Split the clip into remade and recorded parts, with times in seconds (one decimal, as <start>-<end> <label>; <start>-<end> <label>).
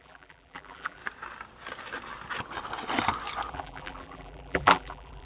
0.0-1.0 remade; 1.0-3.5 recorded; 3.5-5.3 remade